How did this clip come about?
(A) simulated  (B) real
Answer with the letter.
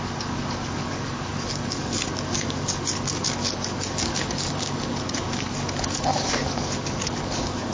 A